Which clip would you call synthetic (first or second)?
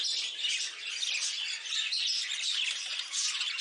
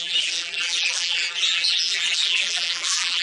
second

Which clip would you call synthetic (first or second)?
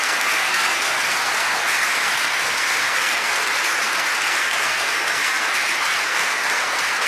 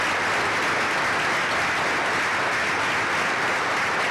first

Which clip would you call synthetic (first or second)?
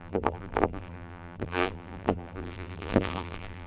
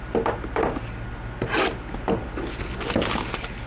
first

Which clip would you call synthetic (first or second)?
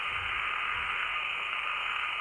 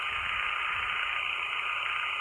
first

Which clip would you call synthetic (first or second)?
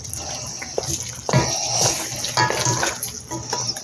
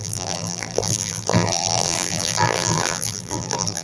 second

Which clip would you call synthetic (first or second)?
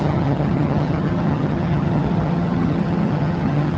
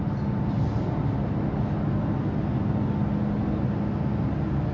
first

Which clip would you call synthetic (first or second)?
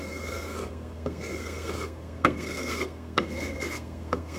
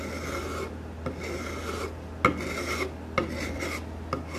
first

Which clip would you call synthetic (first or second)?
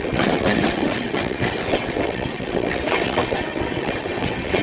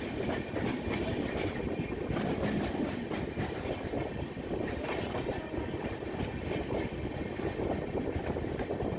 first